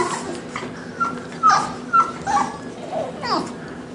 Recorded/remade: recorded